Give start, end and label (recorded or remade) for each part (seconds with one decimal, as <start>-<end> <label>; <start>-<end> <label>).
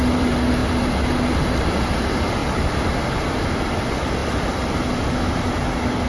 0.0-6.1 recorded